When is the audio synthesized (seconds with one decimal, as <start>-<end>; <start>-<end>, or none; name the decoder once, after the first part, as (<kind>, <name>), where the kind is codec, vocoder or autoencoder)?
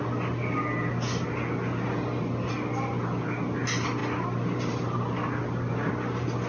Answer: none